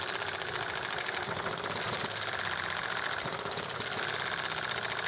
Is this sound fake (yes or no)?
no